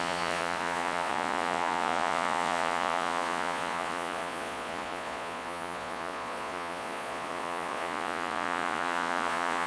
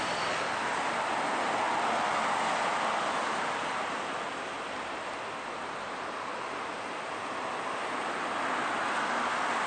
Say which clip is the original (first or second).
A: second